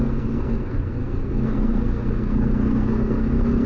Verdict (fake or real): fake